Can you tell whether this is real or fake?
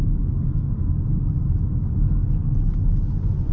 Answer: real